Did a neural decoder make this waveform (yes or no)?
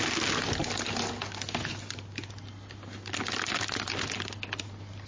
no